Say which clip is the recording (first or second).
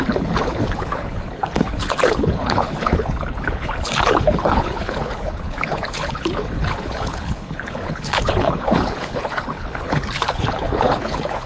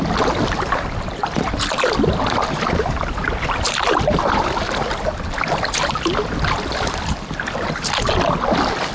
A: second